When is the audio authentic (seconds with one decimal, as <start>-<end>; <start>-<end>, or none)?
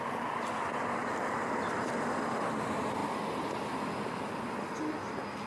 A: 0.0-5.5